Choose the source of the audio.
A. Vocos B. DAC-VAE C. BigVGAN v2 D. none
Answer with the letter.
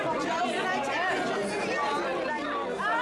D